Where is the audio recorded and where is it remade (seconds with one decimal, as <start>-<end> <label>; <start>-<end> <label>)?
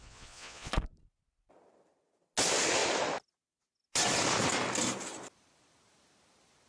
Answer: 0.0-0.7 remade; 0.7-6.7 recorded